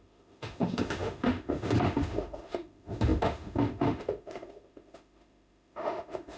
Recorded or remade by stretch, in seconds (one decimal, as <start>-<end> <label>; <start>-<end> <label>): 0.0-6.4 remade